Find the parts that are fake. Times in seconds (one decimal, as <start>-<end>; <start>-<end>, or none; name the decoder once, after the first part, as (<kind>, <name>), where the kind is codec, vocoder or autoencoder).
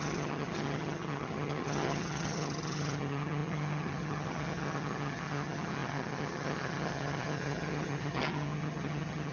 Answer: 0.0-9.3 (vocoder, HiFi-GAN)